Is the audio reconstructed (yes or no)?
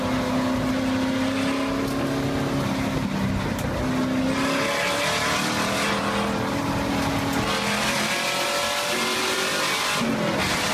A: no